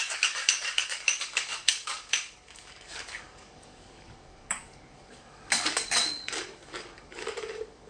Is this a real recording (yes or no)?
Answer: no